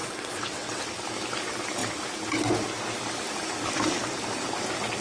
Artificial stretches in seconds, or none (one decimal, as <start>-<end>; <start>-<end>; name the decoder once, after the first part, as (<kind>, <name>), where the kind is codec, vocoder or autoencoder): 0.0-0.8 (vocoder, WaveNeXt)